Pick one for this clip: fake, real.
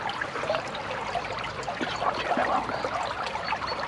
real